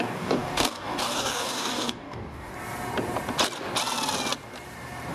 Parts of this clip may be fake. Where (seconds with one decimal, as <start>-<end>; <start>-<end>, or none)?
0.0-2.5